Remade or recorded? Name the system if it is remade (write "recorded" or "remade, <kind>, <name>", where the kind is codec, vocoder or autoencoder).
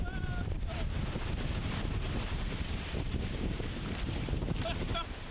remade, vocoder, BigVGAN v2